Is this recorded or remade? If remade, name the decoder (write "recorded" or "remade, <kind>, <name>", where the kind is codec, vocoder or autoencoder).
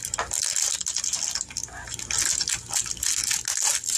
recorded